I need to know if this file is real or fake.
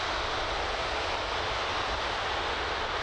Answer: real